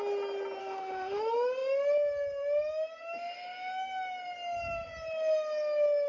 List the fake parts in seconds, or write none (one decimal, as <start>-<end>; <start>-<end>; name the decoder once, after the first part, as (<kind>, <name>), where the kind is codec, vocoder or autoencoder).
0.6-1.2 (autoencoder, DAC-VAE)